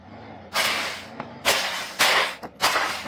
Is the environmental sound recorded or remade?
recorded